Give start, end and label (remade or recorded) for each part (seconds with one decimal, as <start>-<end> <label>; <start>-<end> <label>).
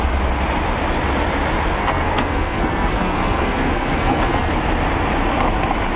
0.0-1.8 recorded; 1.8-4.5 remade; 4.5-6.0 recorded